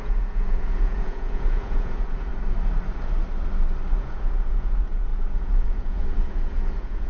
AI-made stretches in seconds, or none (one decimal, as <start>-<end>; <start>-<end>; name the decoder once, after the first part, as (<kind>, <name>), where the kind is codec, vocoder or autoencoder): 0.0-2.3 (vocoder, Vocos); 3.9-7.1